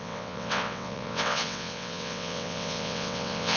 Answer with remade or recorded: remade